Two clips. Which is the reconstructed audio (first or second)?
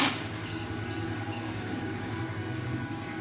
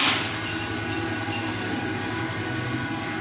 first